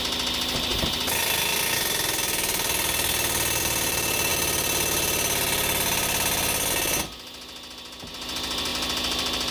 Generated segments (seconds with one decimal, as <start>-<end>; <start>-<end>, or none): none